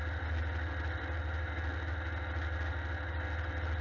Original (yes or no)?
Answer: yes